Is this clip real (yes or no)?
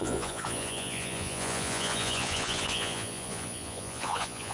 no